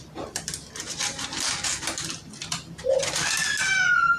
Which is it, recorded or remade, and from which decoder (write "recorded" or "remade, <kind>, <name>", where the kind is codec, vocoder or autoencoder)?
recorded